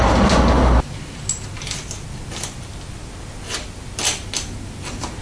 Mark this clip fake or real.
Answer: real